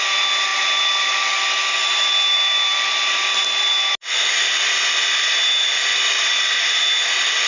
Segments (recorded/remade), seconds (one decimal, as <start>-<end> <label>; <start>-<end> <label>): 0.0-7.5 recorded